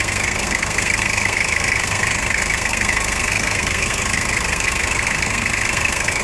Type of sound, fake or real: fake